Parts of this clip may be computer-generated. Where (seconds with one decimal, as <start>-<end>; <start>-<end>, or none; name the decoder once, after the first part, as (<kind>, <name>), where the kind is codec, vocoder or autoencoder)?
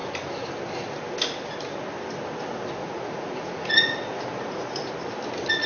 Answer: 2.8-4.9 (vocoder, Vocos)